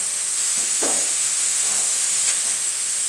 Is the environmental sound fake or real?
fake